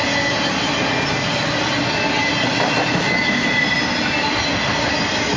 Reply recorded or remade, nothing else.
recorded